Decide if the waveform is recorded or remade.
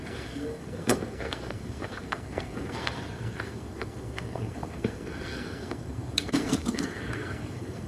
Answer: remade